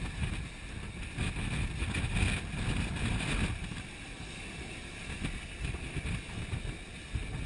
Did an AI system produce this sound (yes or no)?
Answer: no